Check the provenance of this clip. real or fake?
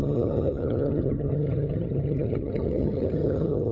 fake